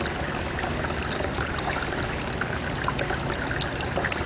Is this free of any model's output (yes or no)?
yes